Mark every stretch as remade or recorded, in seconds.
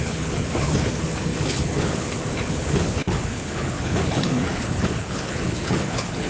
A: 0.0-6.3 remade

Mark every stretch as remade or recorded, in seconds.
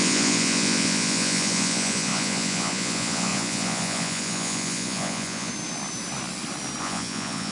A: 0.0-5.5 remade; 5.5-6.8 recorded; 6.8-7.5 remade